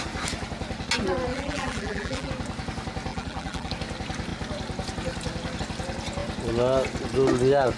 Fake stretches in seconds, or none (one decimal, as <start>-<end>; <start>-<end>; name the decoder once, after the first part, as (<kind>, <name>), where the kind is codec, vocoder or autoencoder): 1.3-2.3 (vocoder, BigVGAN v2); 3.1-3.7